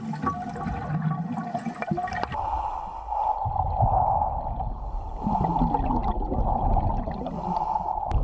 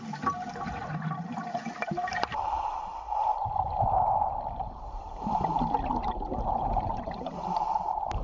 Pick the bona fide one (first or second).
first